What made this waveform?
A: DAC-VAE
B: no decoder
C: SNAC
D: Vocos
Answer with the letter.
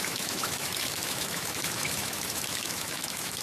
A